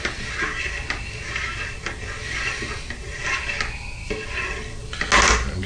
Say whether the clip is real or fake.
real